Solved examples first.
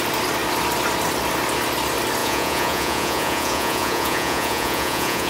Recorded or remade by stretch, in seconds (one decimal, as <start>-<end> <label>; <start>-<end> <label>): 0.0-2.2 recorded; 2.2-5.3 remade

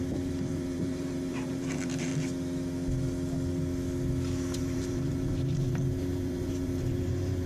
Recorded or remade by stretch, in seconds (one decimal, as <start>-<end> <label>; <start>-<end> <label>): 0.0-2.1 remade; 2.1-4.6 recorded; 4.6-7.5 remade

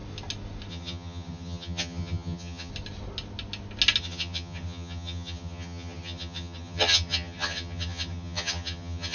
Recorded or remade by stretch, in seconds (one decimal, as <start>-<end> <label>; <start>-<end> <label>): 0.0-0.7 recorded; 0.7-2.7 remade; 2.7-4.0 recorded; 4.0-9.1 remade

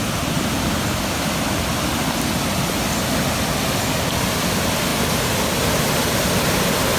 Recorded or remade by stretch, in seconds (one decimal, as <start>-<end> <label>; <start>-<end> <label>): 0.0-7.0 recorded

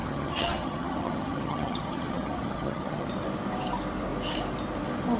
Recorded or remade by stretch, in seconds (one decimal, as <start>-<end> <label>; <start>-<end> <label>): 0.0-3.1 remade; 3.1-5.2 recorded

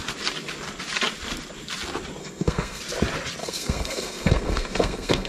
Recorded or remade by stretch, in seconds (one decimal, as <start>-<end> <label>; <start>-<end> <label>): 0.0-2.2 recorded; 2.2-2.8 remade; 2.8-3.4 recorded; 3.4-5.3 remade

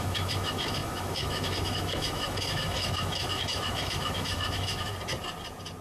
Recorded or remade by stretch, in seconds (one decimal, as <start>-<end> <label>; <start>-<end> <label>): 0.0-4.9 remade; 4.9-5.8 recorded